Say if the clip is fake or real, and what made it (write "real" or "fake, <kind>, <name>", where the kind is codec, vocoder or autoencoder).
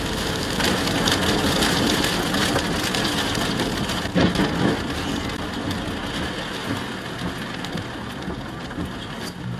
real